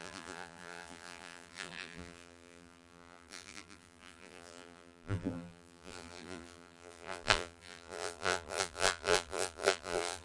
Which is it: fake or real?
fake